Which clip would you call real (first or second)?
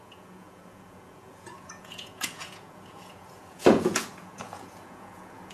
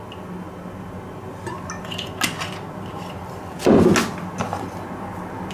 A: second